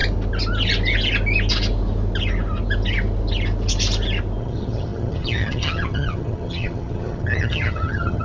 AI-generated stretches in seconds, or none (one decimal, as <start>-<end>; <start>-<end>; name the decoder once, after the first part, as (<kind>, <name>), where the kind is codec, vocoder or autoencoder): 4.4-8.2 (vocoder, HiFi-GAN)